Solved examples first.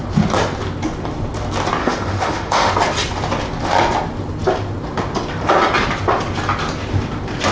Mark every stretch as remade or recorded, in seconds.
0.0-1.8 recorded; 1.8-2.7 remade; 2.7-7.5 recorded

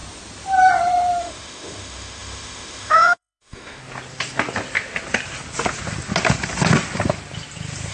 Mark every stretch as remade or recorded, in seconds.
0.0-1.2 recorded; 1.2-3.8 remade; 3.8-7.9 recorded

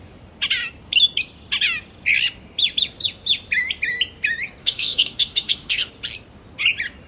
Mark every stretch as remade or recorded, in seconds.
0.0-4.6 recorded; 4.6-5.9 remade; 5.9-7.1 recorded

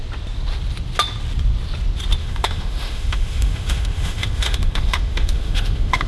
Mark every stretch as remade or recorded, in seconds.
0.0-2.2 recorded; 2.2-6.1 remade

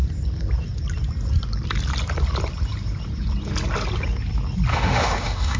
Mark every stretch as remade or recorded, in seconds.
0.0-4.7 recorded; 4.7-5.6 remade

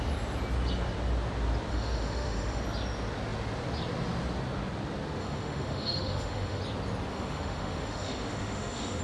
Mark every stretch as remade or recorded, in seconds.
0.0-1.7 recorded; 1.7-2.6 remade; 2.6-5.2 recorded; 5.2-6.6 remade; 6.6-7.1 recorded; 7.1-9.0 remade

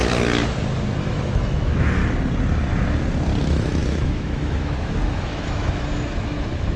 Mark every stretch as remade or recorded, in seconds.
0.0-1.0 recorded; 1.0-2.0 remade; 2.0-3.4 recorded; 3.4-6.8 remade